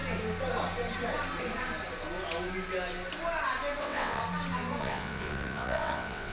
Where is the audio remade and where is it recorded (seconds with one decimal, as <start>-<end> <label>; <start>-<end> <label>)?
0.0-3.8 recorded; 3.8-4.2 remade; 4.2-4.8 recorded; 4.8-6.3 remade